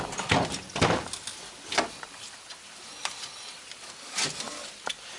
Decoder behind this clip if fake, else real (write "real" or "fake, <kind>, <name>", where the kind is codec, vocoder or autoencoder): real